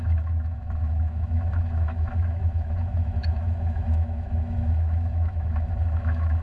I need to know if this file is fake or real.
fake